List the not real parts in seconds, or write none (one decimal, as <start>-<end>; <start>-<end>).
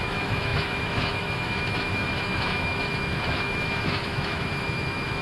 0.0-5.2